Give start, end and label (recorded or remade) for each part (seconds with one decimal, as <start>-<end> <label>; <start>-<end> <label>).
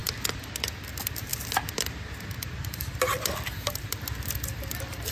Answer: 0.0-5.1 recorded